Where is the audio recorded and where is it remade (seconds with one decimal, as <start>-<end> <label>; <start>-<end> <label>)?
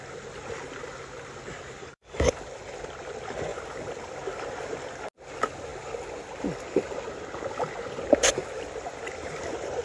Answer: 0.0-1.8 recorded; 1.8-2.3 remade; 2.3-9.8 recorded